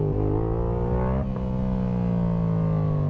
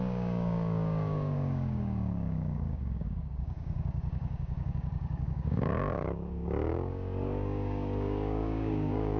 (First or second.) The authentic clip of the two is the first